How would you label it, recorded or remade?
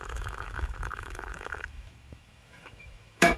remade